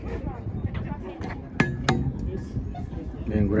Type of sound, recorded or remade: recorded